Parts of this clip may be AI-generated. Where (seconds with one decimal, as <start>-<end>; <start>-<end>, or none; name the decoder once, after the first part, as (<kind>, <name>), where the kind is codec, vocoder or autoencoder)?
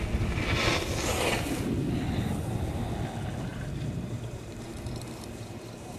3.5-6.0 (vocoder, BigVGAN v2)